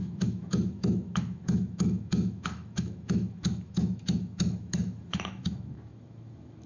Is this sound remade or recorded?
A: remade